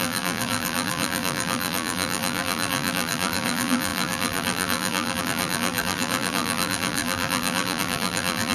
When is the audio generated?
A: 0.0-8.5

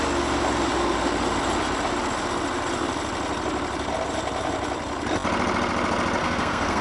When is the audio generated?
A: 6.2-6.8

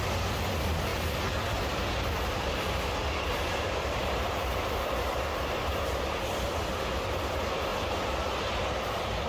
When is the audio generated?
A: none

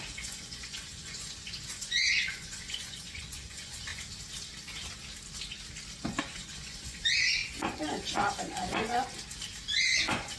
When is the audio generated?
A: 0.0-3.9; 6.2-8.9; 9.9-10.4

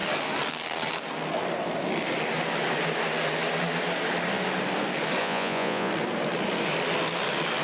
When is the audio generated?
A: 5.2-5.9

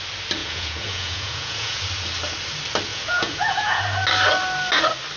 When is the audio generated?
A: 0.4-1.8; 2.9-3.8

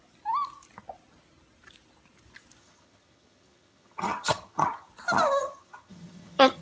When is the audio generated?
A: 2.6-4.9; 5.4-6.6

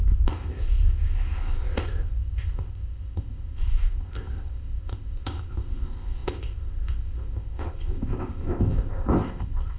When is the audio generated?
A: 0.0-9.8